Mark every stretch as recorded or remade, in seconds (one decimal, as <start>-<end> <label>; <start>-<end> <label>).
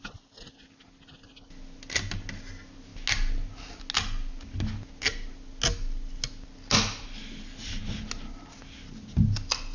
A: 0.0-9.7 recorded